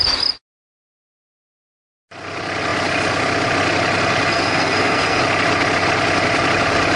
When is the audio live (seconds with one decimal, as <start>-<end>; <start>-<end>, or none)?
0.0-4.3; 5.2-7.0

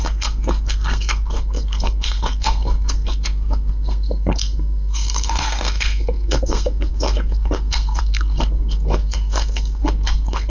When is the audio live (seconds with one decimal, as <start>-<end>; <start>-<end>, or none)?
none

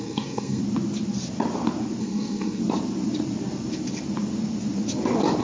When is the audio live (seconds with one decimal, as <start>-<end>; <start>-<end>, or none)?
0.6-2.0; 2.6-5.4